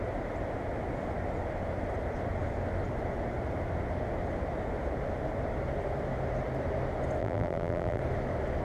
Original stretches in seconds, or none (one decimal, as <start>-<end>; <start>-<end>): 0.0-7.2; 8.0-8.6